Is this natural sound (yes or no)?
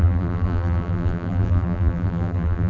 no